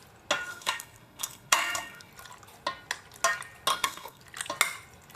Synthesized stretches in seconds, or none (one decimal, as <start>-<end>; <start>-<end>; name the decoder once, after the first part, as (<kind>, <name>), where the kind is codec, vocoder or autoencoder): 0.5-2.1 (codec, SNAC); 3.7-4.2